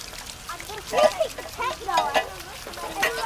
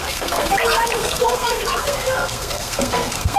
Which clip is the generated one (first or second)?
second